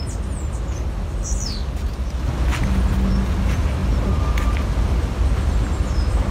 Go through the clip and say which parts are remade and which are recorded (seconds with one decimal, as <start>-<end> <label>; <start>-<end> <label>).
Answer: 0.0-6.3 recorded